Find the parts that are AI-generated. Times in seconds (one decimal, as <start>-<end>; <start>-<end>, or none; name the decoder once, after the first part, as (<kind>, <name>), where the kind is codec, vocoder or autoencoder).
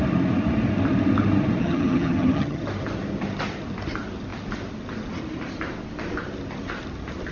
1.6-2.6 (vocoder, HiFi-GAN)